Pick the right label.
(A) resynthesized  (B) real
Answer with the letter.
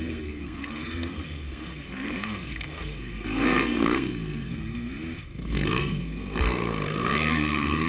A